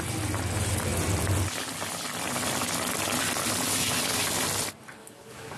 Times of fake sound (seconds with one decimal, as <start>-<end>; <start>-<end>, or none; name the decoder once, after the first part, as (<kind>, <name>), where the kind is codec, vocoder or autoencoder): 5.0-5.6 (codec, DAC)